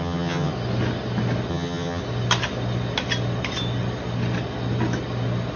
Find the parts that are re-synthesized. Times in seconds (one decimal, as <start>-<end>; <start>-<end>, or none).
0.0-0.5; 1.5-2.0